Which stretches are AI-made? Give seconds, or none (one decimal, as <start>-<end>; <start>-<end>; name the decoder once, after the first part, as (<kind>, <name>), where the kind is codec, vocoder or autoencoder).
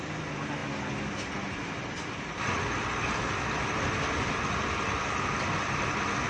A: none